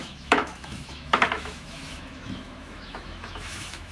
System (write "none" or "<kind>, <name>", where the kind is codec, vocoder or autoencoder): autoencoder, DAC-VAE